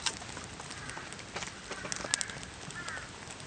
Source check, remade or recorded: recorded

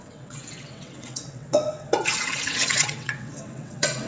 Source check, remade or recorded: remade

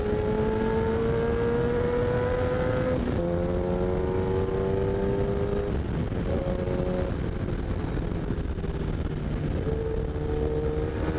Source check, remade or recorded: recorded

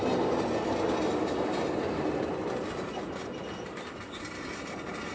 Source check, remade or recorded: recorded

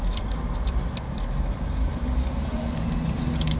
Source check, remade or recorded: recorded